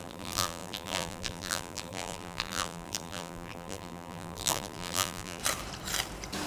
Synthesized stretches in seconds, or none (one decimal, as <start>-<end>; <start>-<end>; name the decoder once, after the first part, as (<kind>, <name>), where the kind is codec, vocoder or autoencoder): 0.0-5.4 (vocoder, BigVGAN v2)